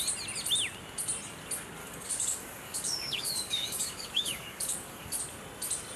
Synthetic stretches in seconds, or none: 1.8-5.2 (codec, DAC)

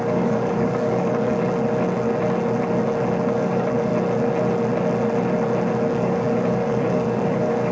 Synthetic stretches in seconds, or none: 0.0-1.4 (codec, DAC); 3.3-3.9; 5.9-7.7

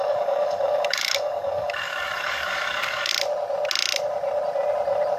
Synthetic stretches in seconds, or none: 0.0-3.1 (codec, DAC)

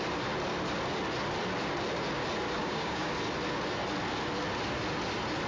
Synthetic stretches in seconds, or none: 2.6-3.1 (codec, DAC)

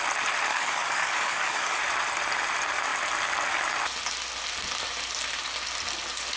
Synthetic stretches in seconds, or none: 0.5-1.8 (codec, DAC)

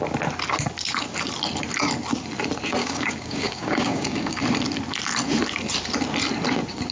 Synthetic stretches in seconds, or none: 2.8-4.4 (codec, DAC)